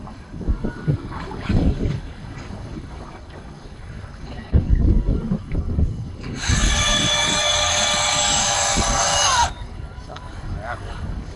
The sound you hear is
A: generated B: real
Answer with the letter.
A